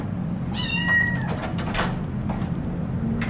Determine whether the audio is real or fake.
real